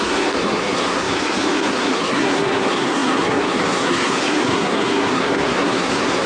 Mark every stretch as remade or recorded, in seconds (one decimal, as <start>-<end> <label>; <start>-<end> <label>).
0.0-6.3 remade